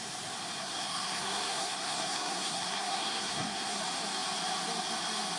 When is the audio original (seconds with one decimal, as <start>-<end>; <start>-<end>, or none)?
0.0-0.6; 3.8-5.4